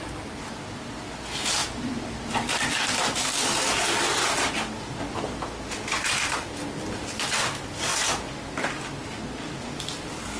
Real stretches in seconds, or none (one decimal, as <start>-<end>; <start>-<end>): 0.0-1.6; 3.0-10.4

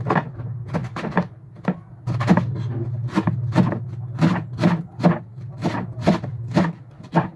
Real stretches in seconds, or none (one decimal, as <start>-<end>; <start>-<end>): 0.8-5.2

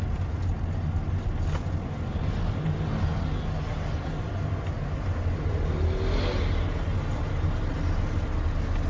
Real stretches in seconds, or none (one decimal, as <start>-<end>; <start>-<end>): 0.0-8.9

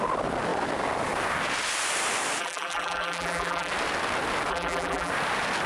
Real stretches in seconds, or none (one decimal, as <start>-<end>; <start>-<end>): 0.0-2.4; 3.7-4.5; 5.1-5.7

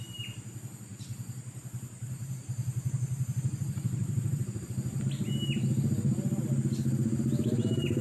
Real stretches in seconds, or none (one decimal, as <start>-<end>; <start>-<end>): 0.0-0.9; 5.0-8.0

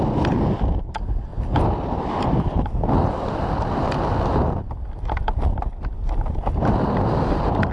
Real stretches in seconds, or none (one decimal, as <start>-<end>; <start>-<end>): 0.0-7.7

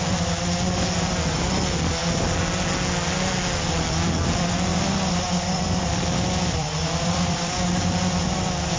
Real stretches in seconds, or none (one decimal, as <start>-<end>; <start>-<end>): 0.0-4.7; 7.8-8.8